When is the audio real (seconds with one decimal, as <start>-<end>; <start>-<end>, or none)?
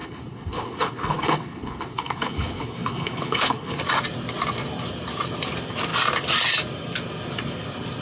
3.8-8.0